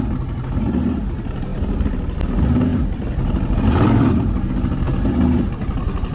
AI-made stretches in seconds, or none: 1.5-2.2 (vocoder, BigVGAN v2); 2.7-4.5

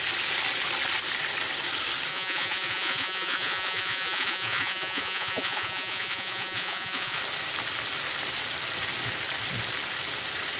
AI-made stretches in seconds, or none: 2.1-7.2 (vocoder, Vocos)

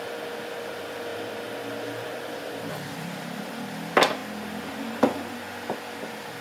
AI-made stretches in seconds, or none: 1.1-3.4 (vocoder, BigVGAN v2)

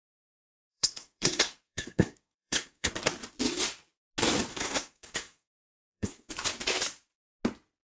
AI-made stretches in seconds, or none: 0.7-2.9 (codec, SNAC); 4.5-6.3

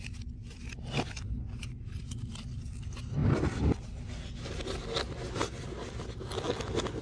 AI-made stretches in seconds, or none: none

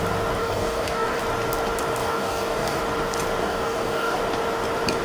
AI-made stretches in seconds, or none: 0.4-1.2 (codec, DAC); 2.0-2.8; 3.4-4.2

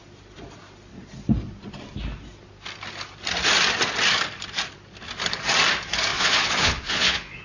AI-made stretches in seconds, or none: 6.1-7.4 (vocoder, Vocos)

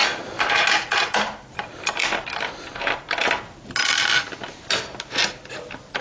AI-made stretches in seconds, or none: none